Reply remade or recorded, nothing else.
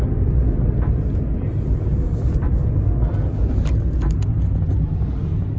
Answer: recorded